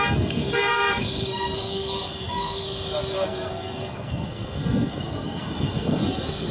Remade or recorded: remade